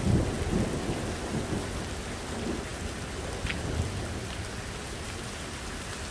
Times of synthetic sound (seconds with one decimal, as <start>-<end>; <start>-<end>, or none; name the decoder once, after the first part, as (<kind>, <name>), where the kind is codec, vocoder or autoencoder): none